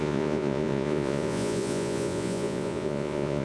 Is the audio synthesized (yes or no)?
yes